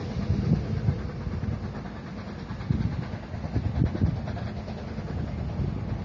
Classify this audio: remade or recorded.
recorded